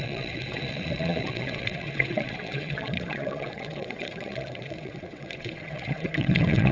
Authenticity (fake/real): fake